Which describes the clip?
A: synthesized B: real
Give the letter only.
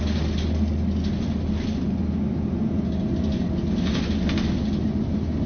B